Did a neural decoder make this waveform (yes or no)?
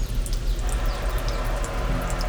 no